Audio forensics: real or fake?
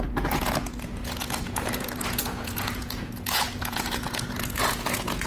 fake